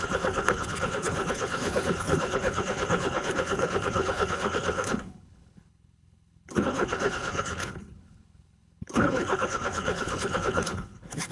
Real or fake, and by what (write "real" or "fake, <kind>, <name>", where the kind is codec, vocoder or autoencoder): fake, codec, HILCodec